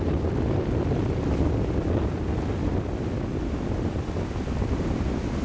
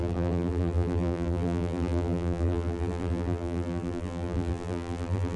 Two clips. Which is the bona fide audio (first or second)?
first